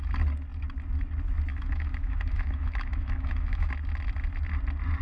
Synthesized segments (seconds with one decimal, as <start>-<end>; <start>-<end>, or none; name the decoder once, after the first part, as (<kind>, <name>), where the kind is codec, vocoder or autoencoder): 1.5-3.7 (autoencoder, DAC-VAE)